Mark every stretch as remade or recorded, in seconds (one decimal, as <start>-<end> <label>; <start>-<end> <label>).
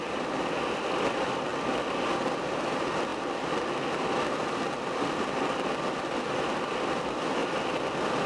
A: 0.0-8.3 recorded